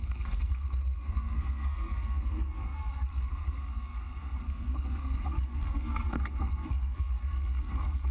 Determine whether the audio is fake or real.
fake